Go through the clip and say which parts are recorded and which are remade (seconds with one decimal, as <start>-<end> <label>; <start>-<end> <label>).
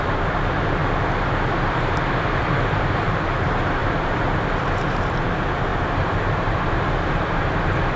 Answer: 0.0-0.8 remade; 0.8-1.5 recorded; 1.5-8.0 remade